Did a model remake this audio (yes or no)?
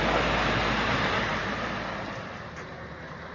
no